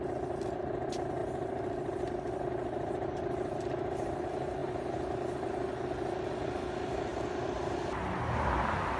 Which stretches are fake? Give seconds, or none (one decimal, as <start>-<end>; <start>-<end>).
none